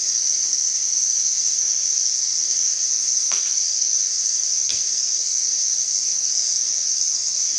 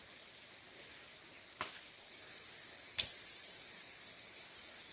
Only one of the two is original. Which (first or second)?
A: second